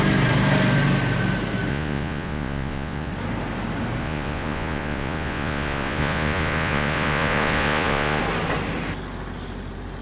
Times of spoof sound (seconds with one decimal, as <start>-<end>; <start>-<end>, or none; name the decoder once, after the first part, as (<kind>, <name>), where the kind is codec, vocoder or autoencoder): 1.7-3.1 (vocoder, Vocos); 4.0-8.2